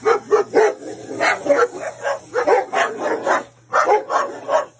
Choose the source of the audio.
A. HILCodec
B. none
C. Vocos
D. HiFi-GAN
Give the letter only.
B